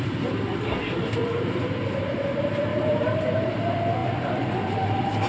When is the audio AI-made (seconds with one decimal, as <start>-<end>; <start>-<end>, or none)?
1.2-1.7; 2.7-3.5